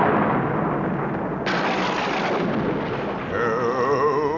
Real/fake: real